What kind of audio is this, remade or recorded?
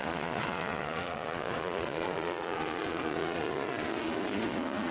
remade